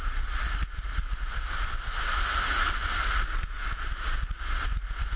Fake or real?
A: real